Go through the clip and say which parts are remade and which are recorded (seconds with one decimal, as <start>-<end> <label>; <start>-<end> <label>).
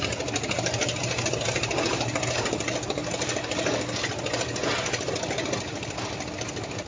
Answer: 0.0-6.9 recorded